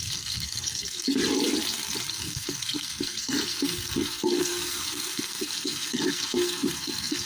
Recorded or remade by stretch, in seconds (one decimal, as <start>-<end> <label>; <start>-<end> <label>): 0.0-1.2 remade; 1.2-2.1 recorded; 2.1-7.3 remade